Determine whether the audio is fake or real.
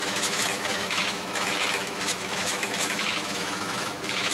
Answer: fake